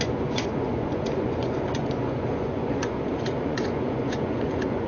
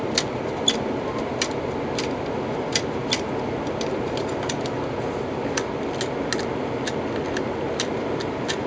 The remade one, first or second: first